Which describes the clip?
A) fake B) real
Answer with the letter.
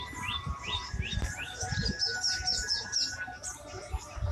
A